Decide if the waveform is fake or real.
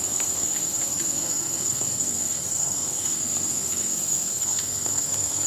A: fake